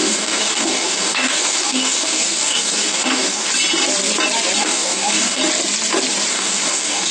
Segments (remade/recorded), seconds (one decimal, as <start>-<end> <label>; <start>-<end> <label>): 0.0-3.5 remade; 3.5-4.6 recorded; 4.6-5.4 remade; 5.4-6.3 recorded; 6.3-7.1 remade